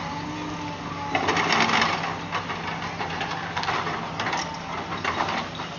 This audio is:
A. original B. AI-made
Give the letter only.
A